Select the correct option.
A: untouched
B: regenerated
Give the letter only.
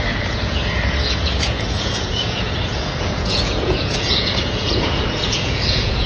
B